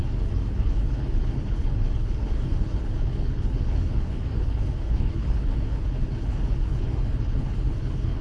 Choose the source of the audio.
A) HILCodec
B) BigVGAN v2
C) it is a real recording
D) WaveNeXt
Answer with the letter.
A